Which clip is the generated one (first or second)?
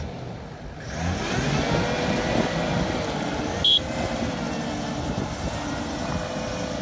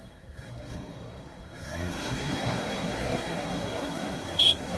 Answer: second